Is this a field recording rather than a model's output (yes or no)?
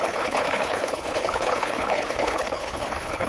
no